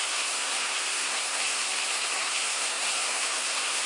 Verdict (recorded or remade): remade